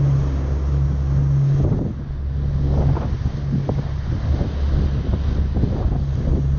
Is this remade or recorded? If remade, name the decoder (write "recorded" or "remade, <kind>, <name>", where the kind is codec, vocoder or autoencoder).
recorded